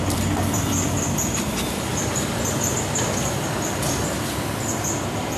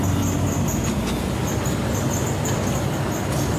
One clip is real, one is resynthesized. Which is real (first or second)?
second